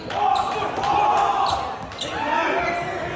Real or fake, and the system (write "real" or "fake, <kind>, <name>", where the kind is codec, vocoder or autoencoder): real